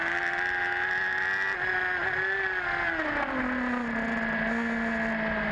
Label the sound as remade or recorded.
recorded